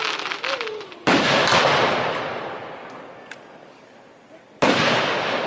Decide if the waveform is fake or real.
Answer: real